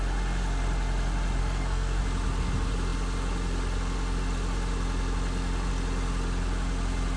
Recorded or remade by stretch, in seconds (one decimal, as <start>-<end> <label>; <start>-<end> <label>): 0.0-1.4 recorded; 1.4-2.0 remade; 2.0-7.2 recorded